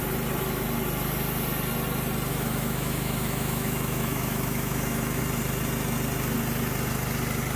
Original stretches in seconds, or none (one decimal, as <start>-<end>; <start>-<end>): 0.0-2.3; 5.2-7.6